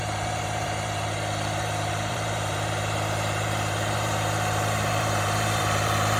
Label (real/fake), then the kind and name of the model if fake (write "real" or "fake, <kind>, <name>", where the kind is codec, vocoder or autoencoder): fake, vocoder, BigVGAN v2